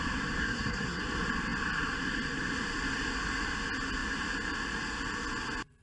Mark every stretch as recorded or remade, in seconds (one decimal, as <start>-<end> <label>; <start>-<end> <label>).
0.0-0.4 recorded; 0.4-1.0 remade; 1.0-5.8 recorded